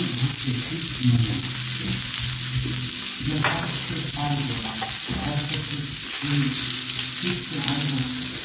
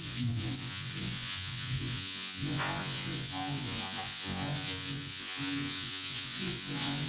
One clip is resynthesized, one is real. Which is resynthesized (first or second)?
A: second